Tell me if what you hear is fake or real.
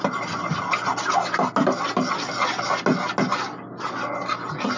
real